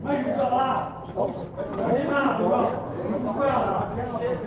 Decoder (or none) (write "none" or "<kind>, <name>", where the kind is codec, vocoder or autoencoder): none